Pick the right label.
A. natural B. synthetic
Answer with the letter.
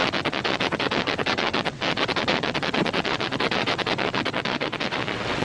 B